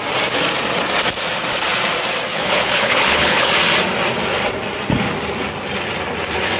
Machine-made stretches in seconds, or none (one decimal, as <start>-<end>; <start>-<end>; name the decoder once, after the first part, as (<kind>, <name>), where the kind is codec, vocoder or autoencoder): 2.3-3.5 (codec, HILCodec)